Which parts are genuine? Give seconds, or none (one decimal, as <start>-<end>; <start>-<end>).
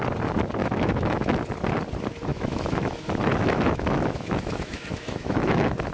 0.0-0.6; 1.4-2.3